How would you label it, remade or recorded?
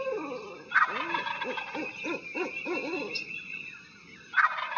recorded